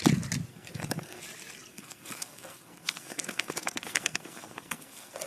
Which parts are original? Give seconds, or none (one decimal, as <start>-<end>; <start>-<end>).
0.0-0.5; 1.2-1.7